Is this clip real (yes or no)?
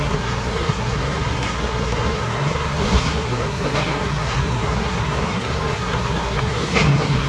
no